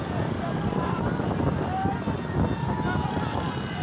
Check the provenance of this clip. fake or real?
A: real